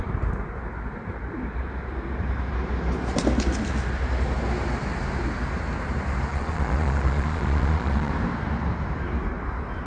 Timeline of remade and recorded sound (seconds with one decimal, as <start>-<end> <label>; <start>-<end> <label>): 0.0-6.3 recorded; 6.3-8.1 remade; 8.1-9.9 recorded